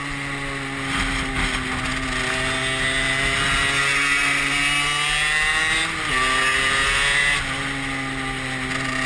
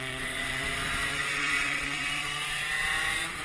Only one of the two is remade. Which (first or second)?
second